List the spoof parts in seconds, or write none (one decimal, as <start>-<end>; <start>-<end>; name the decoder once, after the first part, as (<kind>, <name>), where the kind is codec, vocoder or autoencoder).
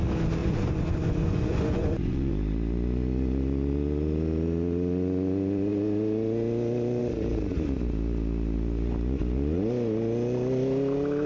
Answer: 0.4-2.3 (vocoder, Vocos)